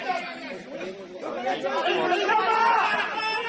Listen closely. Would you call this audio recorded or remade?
recorded